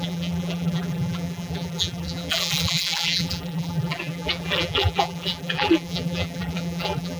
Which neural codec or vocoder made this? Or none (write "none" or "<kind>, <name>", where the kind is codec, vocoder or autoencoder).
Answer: vocoder, BigVGAN v2